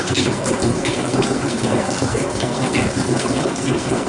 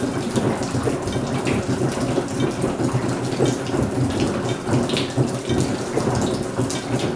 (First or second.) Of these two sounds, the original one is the second